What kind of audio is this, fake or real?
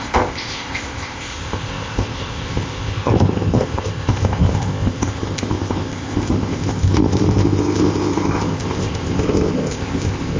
fake